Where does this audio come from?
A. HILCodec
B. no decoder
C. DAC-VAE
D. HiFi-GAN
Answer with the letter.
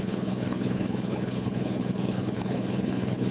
A